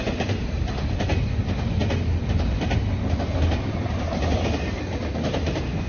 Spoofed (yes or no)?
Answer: no